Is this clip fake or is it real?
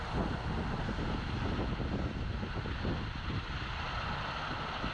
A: real